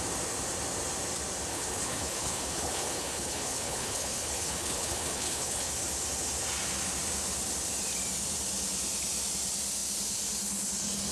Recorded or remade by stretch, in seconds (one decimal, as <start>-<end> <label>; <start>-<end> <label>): 0.0-1.5 recorded; 1.5-5.7 remade; 5.7-11.1 recorded